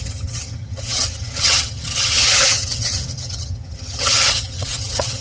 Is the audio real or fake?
fake